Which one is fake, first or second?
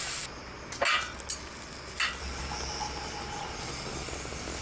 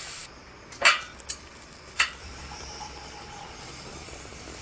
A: second